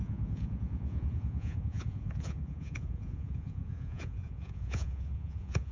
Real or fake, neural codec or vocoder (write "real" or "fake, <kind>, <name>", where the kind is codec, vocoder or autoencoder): fake, vocoder, Vocos